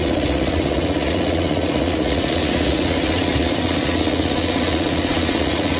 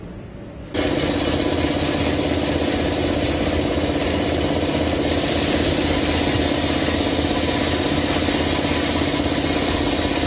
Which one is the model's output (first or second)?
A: first